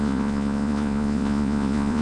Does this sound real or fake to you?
fake